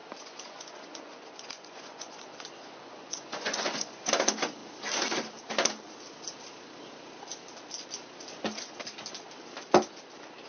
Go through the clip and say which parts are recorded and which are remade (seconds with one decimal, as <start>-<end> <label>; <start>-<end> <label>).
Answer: 0.0-4.1 remade; 4.1-10.5 recorded